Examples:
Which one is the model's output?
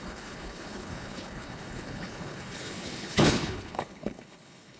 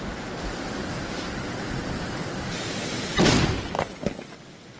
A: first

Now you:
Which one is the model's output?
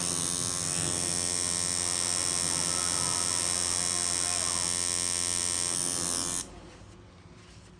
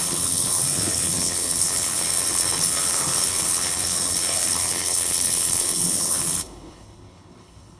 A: second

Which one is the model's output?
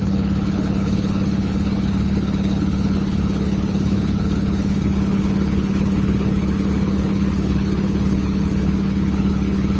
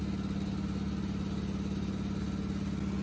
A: first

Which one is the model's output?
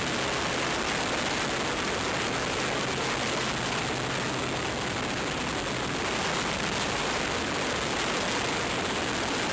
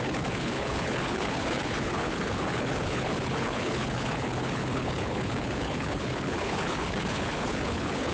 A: second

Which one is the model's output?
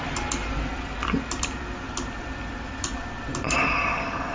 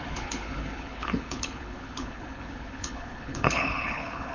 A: second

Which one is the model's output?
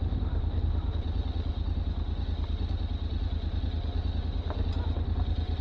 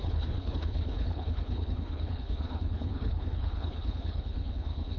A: second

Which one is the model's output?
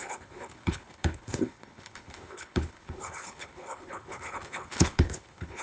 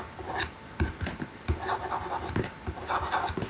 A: first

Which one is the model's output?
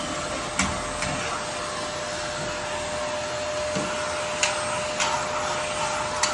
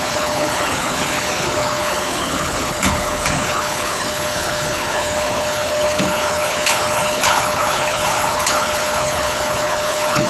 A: second